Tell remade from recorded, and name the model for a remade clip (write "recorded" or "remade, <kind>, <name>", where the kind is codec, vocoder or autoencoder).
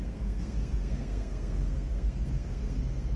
remade, codec, SNAC